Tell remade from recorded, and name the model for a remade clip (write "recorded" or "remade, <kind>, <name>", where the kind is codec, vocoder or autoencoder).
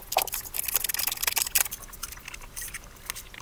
recorded